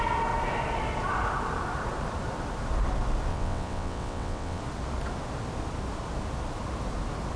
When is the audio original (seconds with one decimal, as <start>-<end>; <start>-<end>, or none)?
0.0-3.3; 4.6-7.4